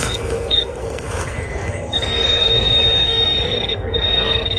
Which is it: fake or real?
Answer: fake